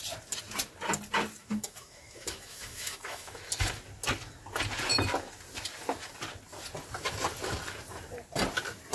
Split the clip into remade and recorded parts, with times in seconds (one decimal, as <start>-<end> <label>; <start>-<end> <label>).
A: 0.0-1.4 recorded; 1.4-3.4 remade; 3.4-8.9 recorded